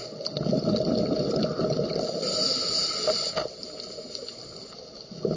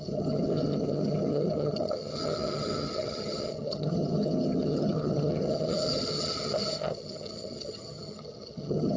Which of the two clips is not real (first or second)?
second